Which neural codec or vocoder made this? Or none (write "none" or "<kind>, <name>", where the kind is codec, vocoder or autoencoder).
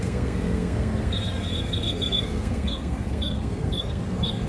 codec, SNAC